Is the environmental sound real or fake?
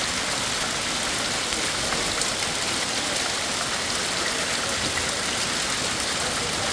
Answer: real